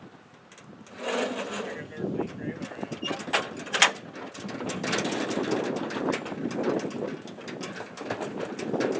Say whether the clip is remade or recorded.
recorded